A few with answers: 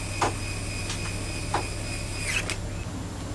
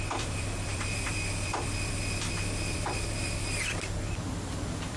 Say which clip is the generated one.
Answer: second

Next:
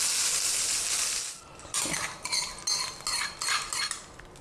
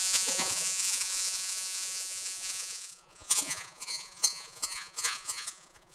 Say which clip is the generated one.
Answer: second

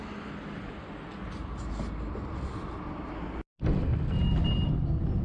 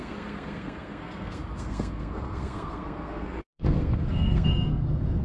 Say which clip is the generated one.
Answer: second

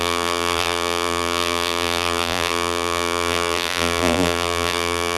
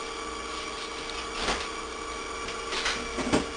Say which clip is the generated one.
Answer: first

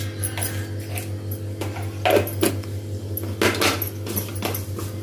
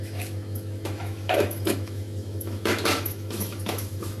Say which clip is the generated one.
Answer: second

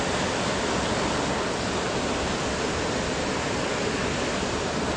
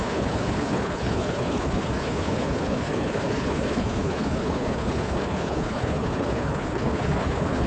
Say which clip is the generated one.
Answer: second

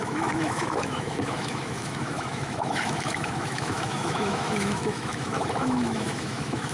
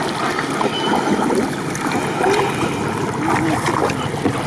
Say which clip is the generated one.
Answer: first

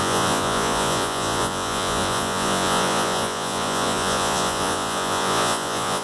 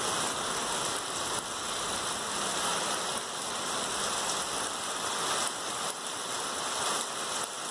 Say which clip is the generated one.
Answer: first